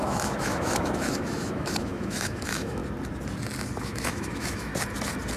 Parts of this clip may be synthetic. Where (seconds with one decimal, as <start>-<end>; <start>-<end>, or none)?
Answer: 0.0-2.8; 3.8-4.7